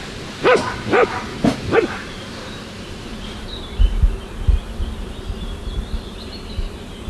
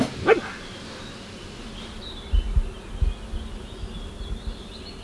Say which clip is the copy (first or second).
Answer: first